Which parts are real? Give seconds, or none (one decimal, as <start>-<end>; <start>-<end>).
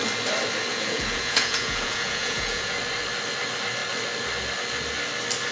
0.0-0.7; 2.8-5.5